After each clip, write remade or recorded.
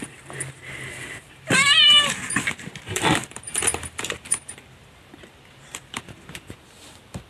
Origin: remade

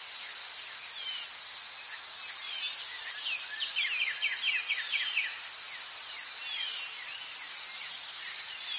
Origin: recorded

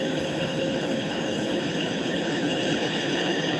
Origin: remade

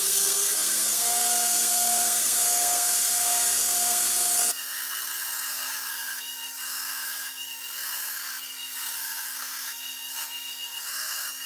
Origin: remade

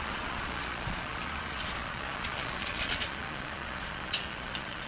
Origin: remade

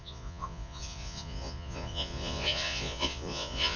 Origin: remade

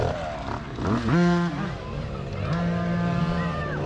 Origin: recorded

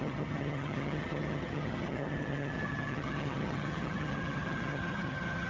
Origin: remade